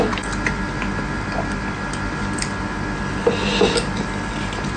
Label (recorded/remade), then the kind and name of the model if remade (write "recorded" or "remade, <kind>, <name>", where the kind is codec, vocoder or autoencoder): recorded